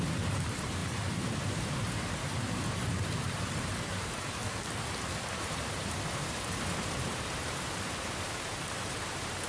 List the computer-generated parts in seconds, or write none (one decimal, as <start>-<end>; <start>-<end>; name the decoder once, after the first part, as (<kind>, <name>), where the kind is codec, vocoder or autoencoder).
0.0-4.4 (vocoder, BigVGAN v2); 5.4-9.5